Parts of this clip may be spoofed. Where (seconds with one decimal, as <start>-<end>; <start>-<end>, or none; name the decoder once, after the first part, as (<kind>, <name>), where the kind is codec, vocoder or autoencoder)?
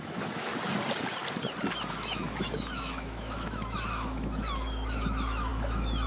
0.0-0.5 (autoencoder, DAC-VAE); 1.9-6.1